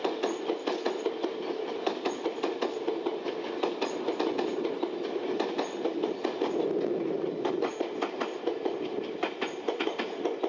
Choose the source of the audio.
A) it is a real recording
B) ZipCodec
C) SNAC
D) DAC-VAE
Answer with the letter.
A